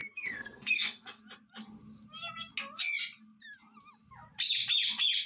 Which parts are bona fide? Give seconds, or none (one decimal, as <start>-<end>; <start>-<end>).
1.2-5.3